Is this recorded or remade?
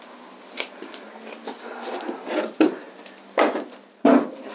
recorded